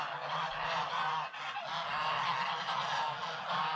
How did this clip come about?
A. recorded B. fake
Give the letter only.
A